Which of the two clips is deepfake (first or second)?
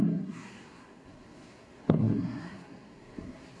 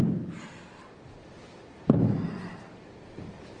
first